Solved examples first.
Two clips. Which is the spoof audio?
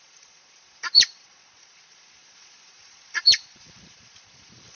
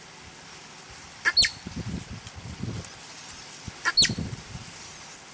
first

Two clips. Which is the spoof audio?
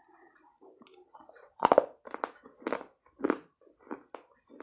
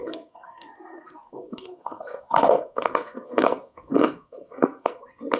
second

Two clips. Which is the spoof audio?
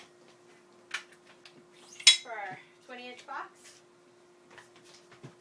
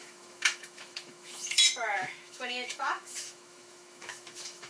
second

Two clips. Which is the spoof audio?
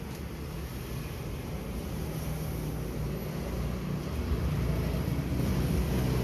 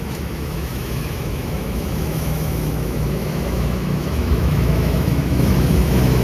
second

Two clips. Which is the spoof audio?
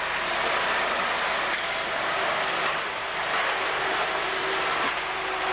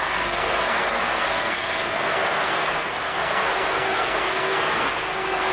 second